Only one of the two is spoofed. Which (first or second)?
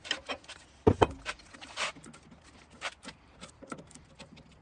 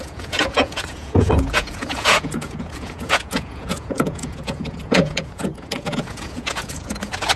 second